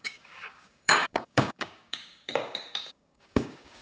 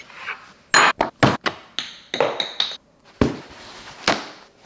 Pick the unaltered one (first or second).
second